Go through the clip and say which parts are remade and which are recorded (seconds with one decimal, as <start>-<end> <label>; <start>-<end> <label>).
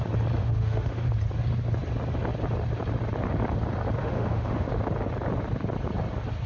0.0-0.4 recorded; 0.4-1.1 remade; 1.1-4.0 recorded; 4.0-4.7 remade; 4.7-6.5 recorded